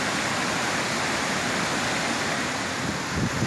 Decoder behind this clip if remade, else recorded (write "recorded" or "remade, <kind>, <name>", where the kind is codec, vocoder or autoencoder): recorded